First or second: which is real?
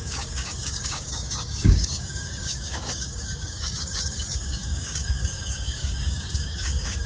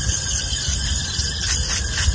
second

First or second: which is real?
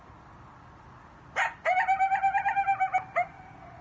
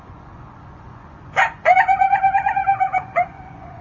first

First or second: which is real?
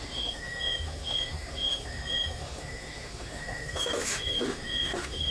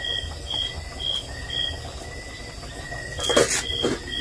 second